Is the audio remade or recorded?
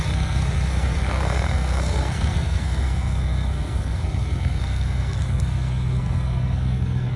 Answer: remade